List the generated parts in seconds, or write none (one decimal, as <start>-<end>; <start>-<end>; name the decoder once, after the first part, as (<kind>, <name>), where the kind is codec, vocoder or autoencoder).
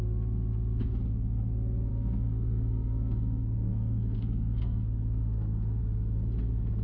1.9-5.8 (codec, SNAC)